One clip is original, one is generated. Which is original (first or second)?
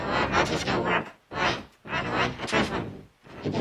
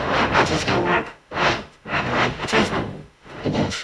first